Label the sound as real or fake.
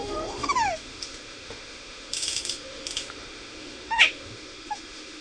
fake